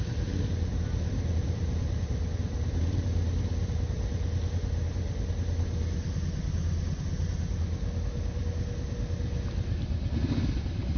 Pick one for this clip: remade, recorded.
recorded